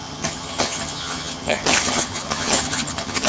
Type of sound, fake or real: fake